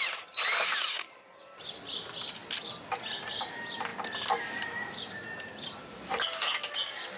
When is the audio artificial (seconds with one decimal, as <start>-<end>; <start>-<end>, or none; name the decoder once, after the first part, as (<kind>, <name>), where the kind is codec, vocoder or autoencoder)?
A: none